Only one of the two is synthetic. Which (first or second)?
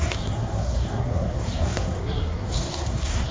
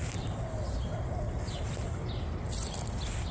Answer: first